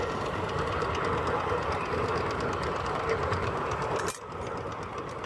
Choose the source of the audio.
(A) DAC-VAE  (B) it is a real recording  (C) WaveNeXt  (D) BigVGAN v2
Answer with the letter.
B